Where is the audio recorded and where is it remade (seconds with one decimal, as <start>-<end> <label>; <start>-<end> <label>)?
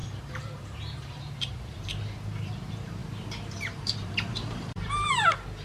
0.0-3.0 remade; 3.0-3.8 recorded; 3.8-5.6 remade